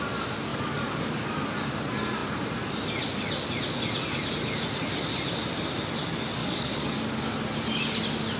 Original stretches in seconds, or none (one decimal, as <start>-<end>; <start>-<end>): 0.0-0.5; 1.2-6.4; 7.2-8.4